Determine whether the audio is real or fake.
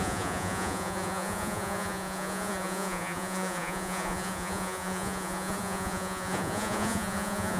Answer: fake